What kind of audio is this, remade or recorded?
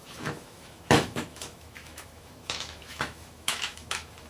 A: remade